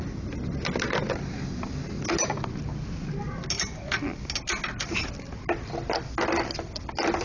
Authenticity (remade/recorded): recorded